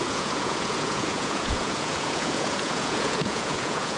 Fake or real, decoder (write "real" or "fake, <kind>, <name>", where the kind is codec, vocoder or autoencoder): fake, vocoder, Vocos